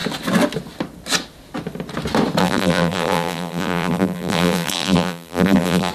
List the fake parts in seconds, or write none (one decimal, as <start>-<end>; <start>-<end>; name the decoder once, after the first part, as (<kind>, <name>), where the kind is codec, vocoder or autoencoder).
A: 2.4-5.9 (vocoder, BigVGAN v2)